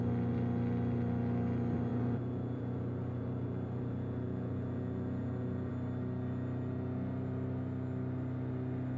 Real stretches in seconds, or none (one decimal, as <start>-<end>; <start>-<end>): 0.0-1.9; 5.7-9.0